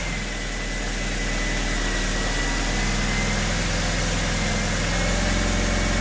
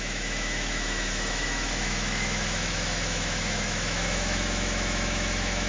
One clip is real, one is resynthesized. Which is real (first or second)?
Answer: first